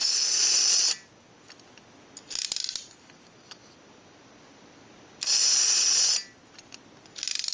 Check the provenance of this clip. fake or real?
real